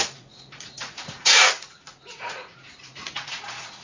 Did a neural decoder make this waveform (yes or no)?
yes